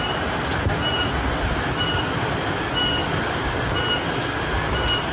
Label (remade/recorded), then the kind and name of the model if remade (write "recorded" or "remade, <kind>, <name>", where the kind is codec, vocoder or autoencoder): recorded